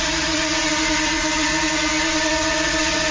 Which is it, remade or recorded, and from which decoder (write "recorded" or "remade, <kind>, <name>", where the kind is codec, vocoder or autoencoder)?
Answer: remade, vocoder, Vocos